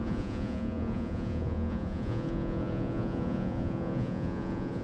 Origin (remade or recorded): remade